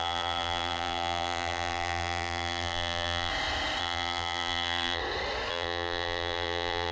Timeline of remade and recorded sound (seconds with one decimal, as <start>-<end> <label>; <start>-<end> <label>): 0.0-3.3 remade; 3.3-3.8 recorded; 3.8-5.0 remade; 5.0-5.5 recorded; 5.5-6.9 remade